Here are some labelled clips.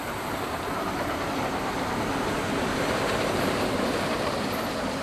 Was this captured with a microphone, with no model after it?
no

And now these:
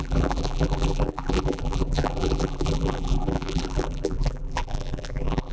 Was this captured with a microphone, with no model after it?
no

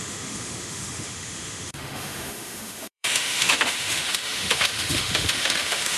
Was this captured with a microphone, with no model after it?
no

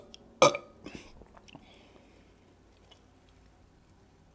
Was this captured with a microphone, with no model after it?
yes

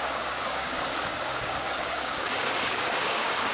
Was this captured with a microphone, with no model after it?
no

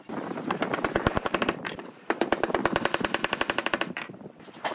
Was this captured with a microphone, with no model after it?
no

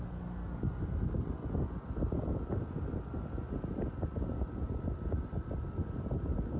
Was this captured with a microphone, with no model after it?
yes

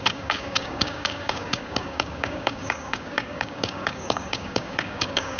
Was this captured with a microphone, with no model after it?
no